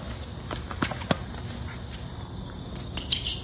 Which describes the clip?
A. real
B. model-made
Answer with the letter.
A